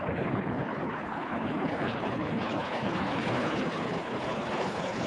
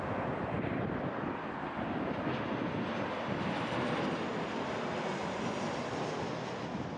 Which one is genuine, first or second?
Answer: second